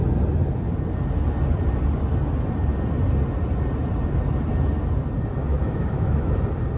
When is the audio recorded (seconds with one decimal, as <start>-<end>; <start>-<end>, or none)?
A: 0.0-5.5; 6.3-6.8